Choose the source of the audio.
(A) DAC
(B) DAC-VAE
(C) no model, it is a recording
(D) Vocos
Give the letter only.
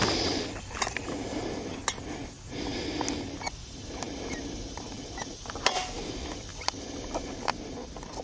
C